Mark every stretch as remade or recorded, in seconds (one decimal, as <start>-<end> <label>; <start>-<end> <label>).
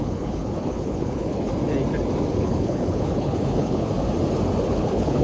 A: 0.0-1.5 remade; 1.5-2.3 recorded; 2.3-3.9 remade; 3.9-4.7 recorded; 4.7-5.2 remade